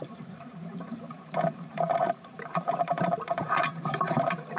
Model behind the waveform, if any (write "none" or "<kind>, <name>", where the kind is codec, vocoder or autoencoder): vocoder, BigVGAN v2